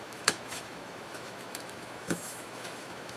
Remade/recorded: remade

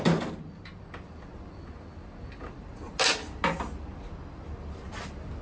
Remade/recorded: recorded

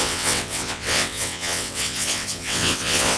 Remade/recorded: remade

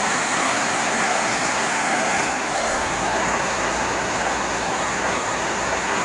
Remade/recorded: remade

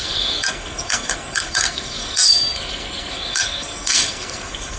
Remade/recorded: remade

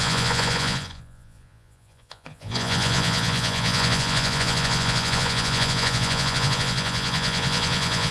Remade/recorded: remade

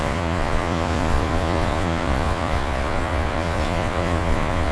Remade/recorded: remade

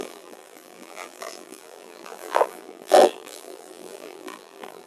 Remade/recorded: remade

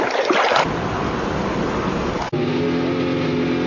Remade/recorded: recorded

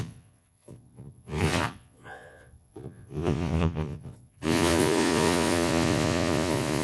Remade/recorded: remade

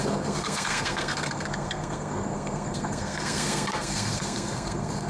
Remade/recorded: remade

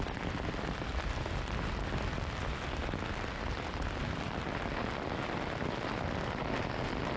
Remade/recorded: recorded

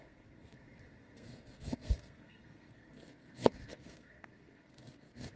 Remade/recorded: remade